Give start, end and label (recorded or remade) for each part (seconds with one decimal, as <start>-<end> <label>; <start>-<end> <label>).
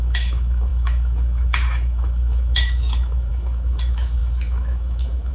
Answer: 0.0-5.3 remade